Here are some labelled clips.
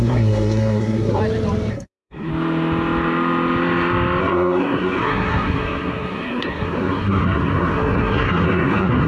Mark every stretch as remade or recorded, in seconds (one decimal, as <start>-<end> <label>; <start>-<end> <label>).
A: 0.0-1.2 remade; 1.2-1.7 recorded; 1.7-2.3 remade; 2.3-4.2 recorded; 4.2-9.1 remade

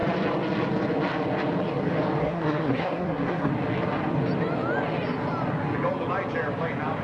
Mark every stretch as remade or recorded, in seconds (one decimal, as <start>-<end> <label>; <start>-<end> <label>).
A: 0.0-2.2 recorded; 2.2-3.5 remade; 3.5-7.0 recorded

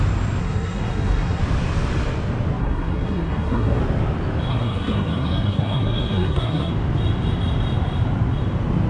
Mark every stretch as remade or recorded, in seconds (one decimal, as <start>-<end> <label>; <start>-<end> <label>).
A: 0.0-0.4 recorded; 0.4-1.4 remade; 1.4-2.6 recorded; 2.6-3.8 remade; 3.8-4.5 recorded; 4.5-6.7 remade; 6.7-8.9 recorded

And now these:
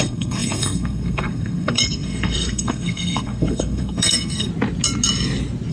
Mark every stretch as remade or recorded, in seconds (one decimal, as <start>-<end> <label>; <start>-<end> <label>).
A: 0.0-4.5 remade; 4.5-5.7 recorded